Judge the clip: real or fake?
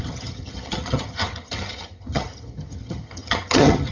fake